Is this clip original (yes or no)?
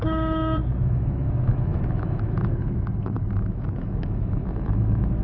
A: no